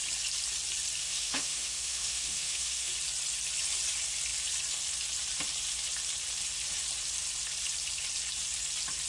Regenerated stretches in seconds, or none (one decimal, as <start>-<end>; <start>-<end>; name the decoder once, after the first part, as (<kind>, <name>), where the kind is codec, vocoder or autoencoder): 1.0-2.9 (autoencoder, DAC-VAE)